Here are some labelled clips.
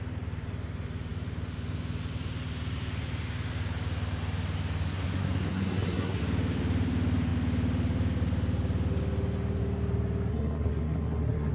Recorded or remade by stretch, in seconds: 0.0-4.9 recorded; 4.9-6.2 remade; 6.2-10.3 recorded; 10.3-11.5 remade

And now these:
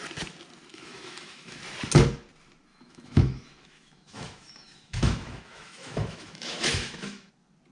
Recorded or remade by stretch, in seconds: 0.0-0.7 recorded; 0.7-1.6 remade; 1.6-2.7 recorded; 2.7-7.3 remade; 7.3-7.7 recorded

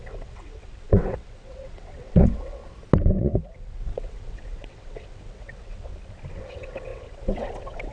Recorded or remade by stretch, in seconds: 0.0-2.6 remade; 2.6-3.2 recorded; 3.2-5.9 remade; 5.9-6.4 recorded; 6.4-7.9 remade

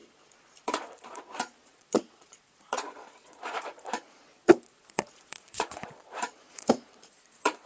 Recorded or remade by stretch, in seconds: 0.0-7.7 remade

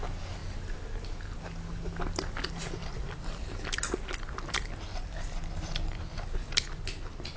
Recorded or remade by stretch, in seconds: 0.0-4.9 recorded; 4.9-5.4 remade; 5.4-7.4 recorded

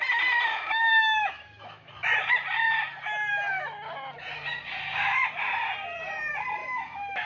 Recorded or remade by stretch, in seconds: 0.0-0.5 recorded; 0.5-1.9 remade; 1.9-6.6 recorded; 6.6-7.3 remade

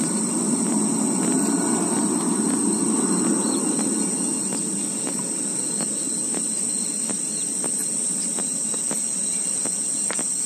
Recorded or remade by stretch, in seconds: 0.0-7.5 recorded; 7.5-8.6 remade; 8.6-10.5 recorded